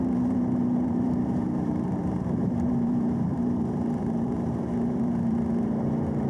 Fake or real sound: fake